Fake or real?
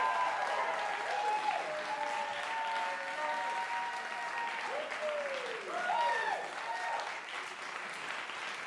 real